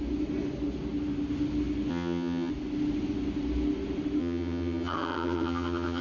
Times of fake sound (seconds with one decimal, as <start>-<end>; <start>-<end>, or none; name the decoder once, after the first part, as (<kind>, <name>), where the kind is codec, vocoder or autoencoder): 1.9-2.5 (vocoder, HiFi-GAN); 4.2-6.0